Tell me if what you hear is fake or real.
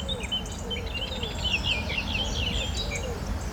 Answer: real